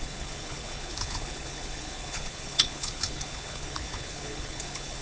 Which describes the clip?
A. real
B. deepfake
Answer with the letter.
B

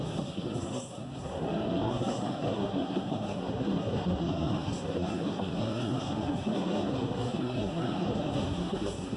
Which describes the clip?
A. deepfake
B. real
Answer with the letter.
A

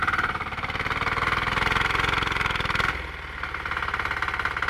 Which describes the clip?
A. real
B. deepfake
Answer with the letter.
A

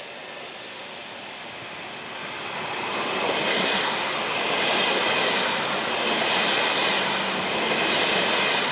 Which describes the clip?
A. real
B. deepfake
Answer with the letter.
A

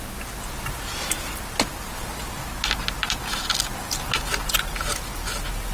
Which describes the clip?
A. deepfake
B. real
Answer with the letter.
B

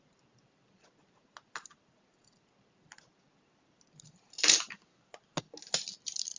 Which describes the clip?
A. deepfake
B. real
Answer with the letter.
B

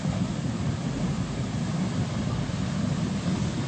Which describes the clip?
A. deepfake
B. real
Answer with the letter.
B